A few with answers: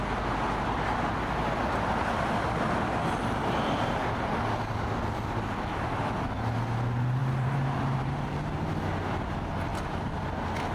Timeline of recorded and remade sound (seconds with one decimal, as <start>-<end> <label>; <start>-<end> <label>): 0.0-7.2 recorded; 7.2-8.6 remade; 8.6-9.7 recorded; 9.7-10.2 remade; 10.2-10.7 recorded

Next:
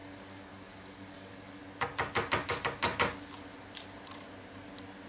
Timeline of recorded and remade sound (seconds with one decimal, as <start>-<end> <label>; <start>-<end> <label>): 0.0-1.6 remade; 1.6-5.1 recorded

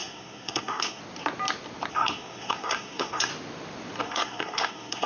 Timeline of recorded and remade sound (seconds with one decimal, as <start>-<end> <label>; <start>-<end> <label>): 0.0-1.0 remade; 1.0-1.9 recorded; 1.9-3.3 remade; 3.3-4.0 recorded; 4.0-5.1 remade

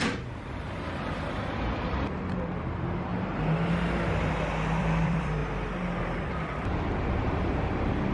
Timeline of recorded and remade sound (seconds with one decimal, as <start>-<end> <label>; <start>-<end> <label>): 0.0-3.1 remade; 3.1-4.8 recorded; 4.8-5.4 remade; 5.4-6.0 recorded; 6.0-8.1 remade

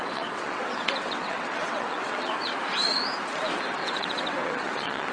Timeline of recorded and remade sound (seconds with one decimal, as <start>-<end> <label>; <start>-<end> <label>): 0.0-2.3 remade; 2.3-3.8 recorded; 3.8-5.1 remade